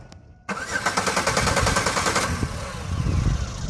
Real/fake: real